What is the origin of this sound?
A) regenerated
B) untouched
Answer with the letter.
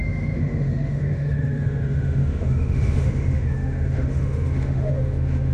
A